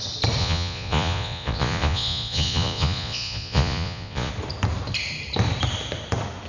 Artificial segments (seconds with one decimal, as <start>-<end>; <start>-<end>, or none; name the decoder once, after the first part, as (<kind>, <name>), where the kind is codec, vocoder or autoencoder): 0.4-4.3 (vocoder, Vocos)